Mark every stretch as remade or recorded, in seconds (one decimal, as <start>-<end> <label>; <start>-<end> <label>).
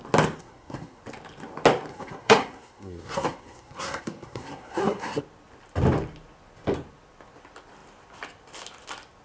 0.0-0.4 recorded; 0.4-1.0 remade; 1.0-1.9 recorded; 1.9-5.2 remade; 5.2-9.2 recorded